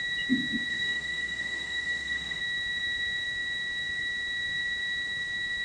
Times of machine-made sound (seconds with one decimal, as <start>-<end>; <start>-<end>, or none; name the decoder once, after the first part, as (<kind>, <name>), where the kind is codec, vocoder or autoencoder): 0.7-2.4 (codec, SNAC)